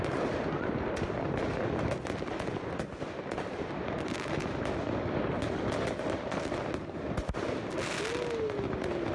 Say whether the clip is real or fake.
real